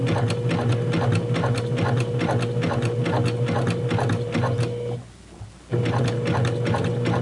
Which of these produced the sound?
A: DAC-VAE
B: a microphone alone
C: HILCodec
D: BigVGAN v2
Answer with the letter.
B